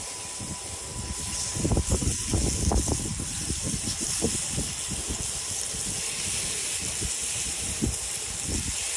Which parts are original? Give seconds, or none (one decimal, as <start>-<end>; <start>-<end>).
0.0-7.2; 8.0-9.0